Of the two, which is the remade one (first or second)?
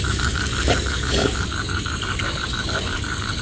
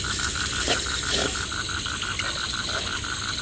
first